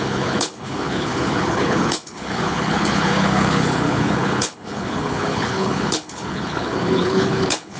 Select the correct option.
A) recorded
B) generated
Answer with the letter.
B